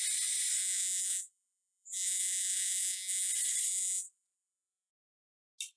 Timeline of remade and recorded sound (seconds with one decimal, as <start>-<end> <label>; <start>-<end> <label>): 0.0-0.6 recorded; 0.6-3.3 remade; 3.3-3.7 recorded; 3.7-4.9 remade; 4.9-5.8 recorded